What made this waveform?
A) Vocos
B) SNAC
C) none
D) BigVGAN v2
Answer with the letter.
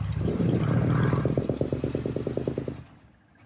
C